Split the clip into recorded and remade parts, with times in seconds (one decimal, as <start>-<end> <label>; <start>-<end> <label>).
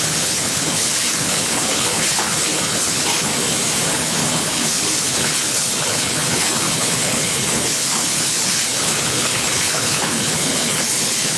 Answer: 0.0-3.3 remade; 3.3-3.9 recorded; 3.9-11.4 remade